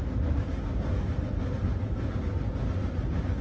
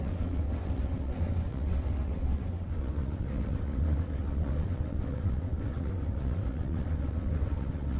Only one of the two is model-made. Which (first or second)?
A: second